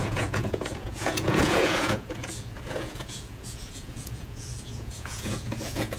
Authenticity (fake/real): fake